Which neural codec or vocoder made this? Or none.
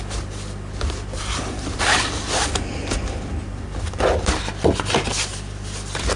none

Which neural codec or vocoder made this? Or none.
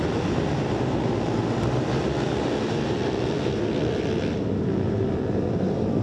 vocoder, BigVGAN v2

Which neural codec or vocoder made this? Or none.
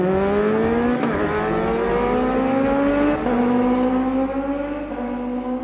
none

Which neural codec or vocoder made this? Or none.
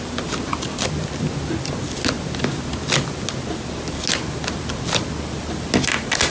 none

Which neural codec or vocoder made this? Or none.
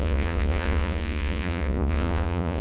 vocoder, Vocos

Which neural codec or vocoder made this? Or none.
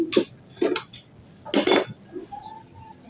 none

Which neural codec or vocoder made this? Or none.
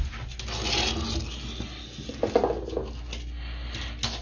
none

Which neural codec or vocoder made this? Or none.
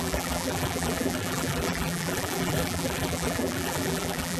vocoder, BigVGAN v2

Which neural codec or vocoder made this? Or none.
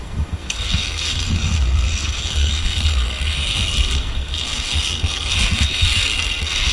codec, SNAC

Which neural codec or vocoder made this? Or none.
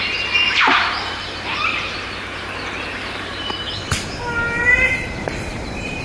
vocoder, BigVGAN v2